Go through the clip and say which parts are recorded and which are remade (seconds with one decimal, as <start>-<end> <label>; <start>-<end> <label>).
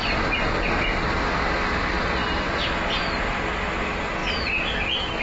0.0-5.2 recorded